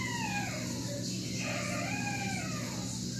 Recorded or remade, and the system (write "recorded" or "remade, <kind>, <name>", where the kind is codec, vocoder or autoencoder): recorded